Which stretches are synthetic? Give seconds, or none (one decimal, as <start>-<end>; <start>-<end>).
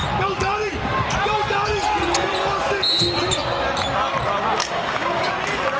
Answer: 4.6-5.3